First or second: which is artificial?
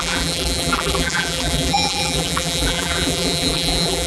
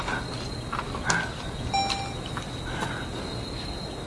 first